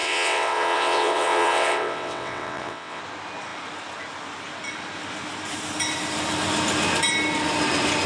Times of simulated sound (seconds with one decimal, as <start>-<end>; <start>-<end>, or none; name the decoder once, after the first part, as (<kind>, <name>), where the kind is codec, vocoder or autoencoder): 0.0-3.0 (vocoder, WaveNeXt)